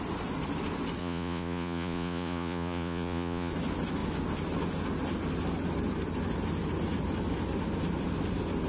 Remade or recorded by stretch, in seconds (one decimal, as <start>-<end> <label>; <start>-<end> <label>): 0.0-1.0 recorded; 1.0-3.5 remade; 3.5-8.7 recorded